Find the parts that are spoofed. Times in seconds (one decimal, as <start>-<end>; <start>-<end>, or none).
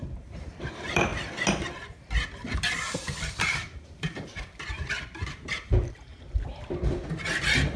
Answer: 0.0-1.1; 3.4-6.1